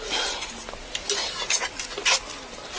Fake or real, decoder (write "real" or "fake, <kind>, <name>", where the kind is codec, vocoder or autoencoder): real